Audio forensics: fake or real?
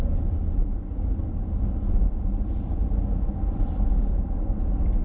real